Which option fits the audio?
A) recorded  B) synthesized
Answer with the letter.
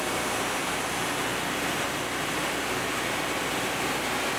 A